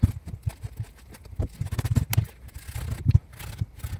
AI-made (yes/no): no